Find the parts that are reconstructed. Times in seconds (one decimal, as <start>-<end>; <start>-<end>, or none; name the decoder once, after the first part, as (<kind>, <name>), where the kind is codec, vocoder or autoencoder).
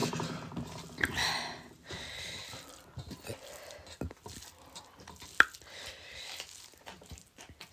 none